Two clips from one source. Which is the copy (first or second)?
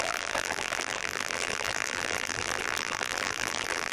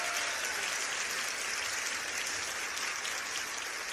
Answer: first